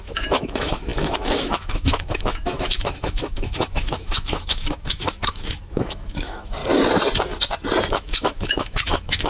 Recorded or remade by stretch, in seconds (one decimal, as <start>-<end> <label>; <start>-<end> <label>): 0.0-6.6 remade; 6.6-7.9 recorded; 7.9-9.3 remade

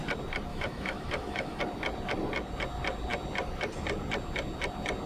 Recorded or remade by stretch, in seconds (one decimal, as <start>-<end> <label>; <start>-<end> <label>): 0.0-0.5 recorded; 0.5-1.6 remade; 1.6-5.1 recorded

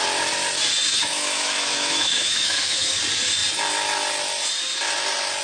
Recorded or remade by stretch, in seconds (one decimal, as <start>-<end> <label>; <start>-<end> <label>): 0.0-0.9 recorded; 0.9-3.0 remade; 3.0-5.4 recorded